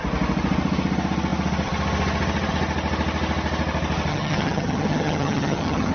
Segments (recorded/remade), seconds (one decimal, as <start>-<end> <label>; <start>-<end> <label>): 0.0-4.1 recorded; 4.1-5.9 remade